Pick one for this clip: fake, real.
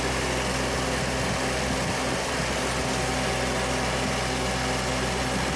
real